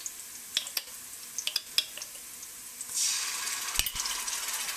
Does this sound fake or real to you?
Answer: real